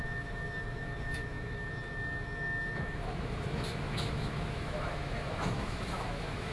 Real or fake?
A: fake